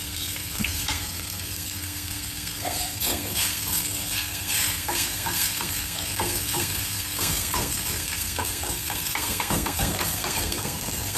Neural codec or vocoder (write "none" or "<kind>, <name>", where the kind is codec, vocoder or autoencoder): codec, SNAC